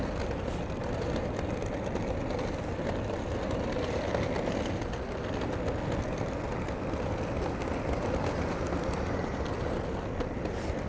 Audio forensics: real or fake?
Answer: real